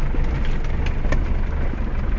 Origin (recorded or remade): recorded